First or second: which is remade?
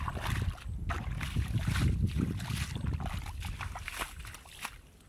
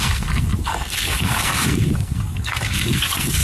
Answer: second